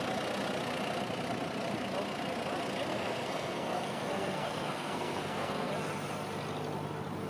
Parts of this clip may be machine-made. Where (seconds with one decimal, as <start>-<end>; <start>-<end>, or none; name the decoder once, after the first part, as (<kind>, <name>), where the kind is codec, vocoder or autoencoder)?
2.9-5.7 (codec, SNAC)